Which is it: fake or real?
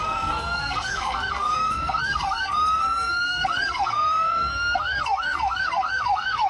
fake